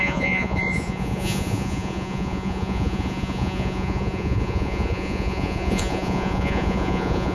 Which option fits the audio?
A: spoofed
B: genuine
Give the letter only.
A